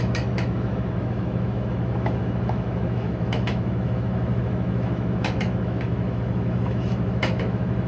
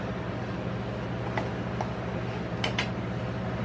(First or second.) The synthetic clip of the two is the first